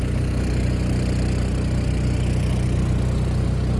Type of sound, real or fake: real